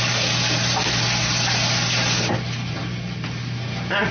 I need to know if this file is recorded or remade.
recorded